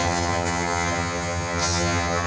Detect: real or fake fake